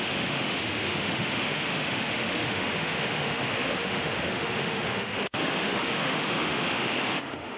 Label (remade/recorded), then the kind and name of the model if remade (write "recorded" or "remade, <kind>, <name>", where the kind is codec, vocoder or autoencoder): remade, autoencoder, DAC-VAE